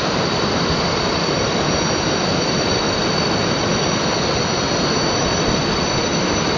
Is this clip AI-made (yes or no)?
no